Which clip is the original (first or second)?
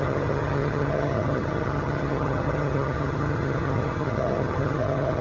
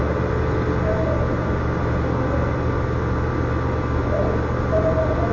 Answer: second